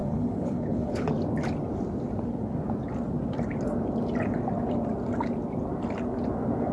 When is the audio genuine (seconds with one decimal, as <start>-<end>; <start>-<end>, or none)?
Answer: 1.1-6.7